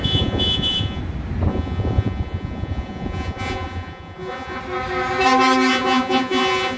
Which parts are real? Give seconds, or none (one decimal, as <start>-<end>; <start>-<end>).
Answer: 1.0-1.5; 4.6-5.7